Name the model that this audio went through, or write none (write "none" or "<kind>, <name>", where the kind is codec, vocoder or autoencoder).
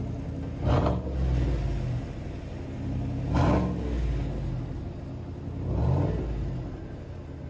none